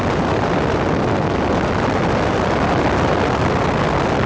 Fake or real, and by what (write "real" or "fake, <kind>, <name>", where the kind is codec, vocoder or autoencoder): real